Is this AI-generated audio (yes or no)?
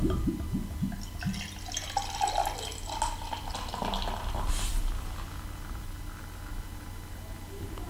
no